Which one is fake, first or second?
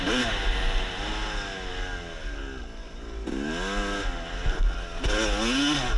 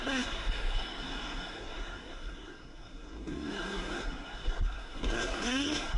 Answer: second